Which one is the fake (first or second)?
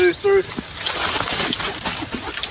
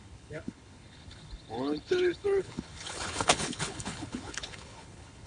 second